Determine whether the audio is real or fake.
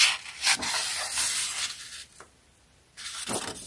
real